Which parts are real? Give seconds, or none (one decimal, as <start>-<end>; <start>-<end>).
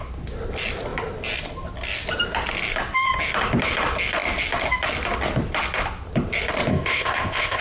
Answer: 0.0-6.7